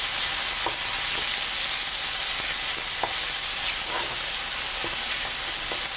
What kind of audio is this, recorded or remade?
recorded